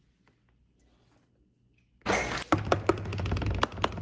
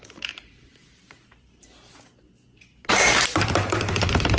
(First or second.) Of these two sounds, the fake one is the second